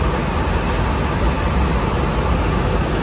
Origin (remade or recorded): recorded